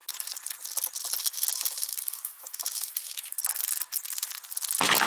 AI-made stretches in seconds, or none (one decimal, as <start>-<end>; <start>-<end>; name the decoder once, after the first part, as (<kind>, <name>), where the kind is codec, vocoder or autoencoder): 1.2-3.3 (autoencoder, DAC-VAE)